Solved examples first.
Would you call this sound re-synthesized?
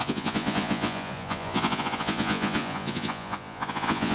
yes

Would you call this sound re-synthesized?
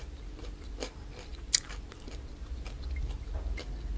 no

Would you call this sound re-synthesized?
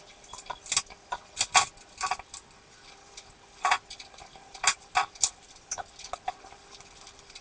no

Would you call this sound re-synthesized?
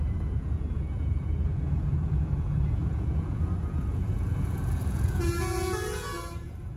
yes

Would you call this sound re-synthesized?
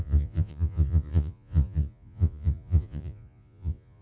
yes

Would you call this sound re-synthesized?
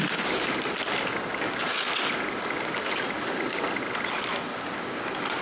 no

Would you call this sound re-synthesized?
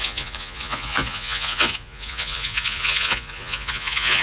yes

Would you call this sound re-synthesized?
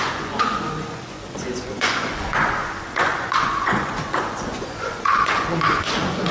yes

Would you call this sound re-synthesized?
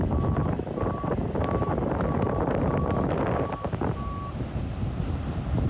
no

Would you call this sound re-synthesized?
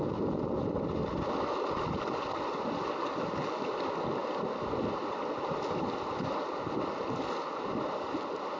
no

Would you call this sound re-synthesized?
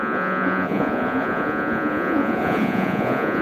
yes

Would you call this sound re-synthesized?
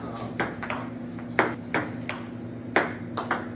no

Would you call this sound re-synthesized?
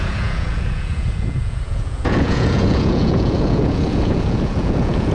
yes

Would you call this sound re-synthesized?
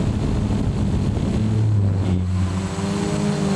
no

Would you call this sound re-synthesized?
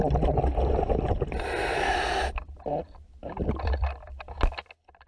no